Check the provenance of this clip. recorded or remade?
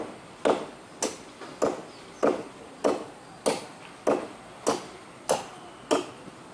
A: recorded